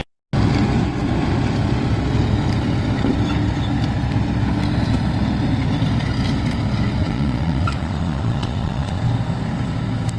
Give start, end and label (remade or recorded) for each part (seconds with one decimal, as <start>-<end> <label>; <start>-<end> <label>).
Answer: 0.0-7.0 recorded; 7.0-9.0 remade; 9.0-10.2 recorded